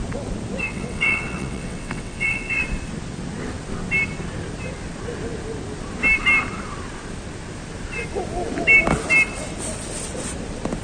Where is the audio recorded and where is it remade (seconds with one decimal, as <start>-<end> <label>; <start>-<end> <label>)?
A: 0.0-0.6 recorded; 0.6-2.6 remade; 2.6-10.8 recorded